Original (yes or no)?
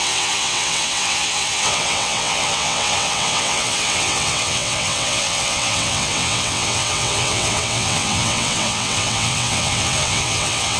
no